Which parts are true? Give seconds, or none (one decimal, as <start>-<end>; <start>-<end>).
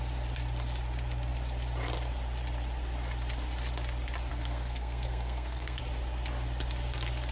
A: 0.0-4.3; 5.8-7.3